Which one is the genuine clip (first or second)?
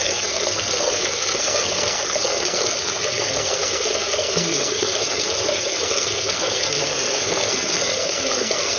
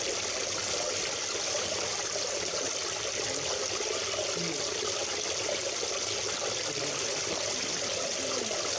second